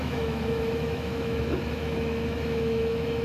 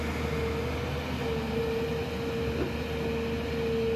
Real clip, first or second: second